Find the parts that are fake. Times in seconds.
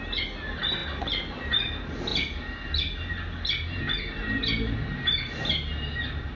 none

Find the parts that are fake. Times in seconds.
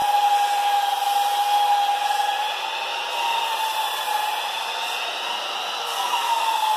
5.8-6.8 (codec, SNAC)